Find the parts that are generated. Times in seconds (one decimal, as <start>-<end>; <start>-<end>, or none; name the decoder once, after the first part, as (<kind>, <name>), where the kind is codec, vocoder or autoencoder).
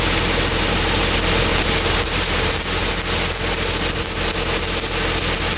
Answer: 1.5-2.8 (vocoder, BigVGAN v2)